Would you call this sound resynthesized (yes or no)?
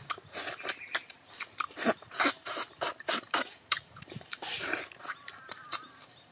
yes